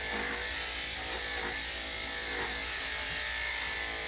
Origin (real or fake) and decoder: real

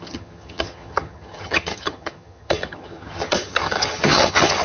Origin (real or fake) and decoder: fake, vocoder, HiFi-GAN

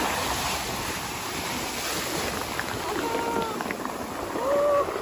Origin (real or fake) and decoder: real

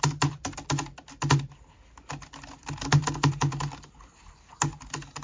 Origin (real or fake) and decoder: real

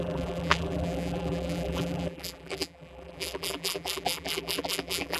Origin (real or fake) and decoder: fake, vocoder, BigVGAN v2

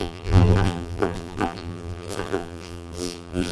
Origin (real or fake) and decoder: fake, vocoder, BigVGAN v2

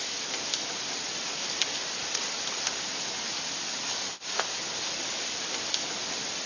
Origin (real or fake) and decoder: fake, vocoder, BigVGAN v2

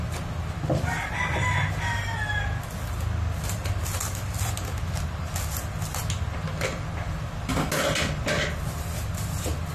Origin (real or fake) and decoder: real